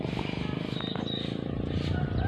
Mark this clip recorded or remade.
recorded